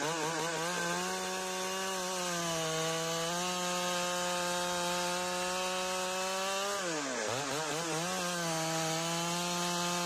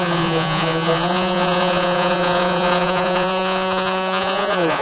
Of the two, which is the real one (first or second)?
first